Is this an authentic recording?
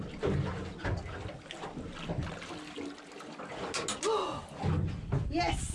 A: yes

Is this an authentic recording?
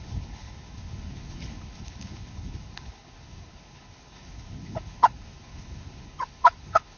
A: no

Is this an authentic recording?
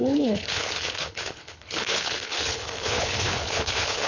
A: no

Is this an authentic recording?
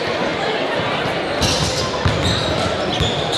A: yes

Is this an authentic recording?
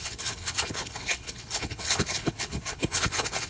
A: no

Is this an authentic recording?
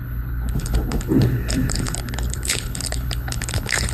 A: no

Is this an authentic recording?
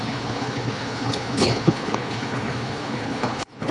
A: no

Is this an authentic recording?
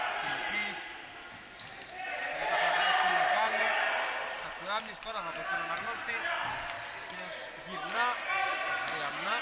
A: yes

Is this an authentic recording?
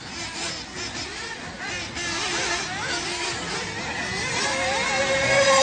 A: yes